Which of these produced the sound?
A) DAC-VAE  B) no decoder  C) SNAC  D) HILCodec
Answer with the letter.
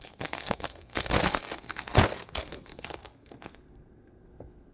C